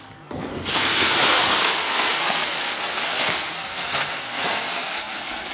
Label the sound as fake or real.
fake